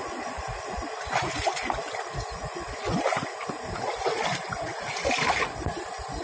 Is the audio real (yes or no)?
yes